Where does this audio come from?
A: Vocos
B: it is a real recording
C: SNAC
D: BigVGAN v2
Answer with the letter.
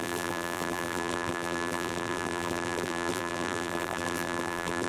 D